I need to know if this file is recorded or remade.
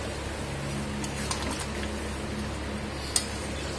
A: recorded